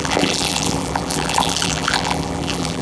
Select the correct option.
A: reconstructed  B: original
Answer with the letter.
A